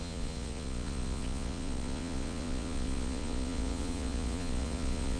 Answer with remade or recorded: remade